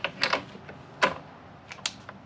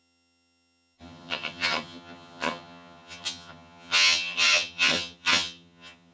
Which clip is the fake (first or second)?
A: second